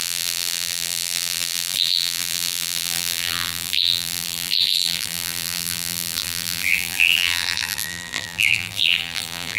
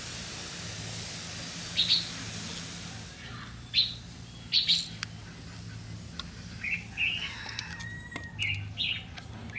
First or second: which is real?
second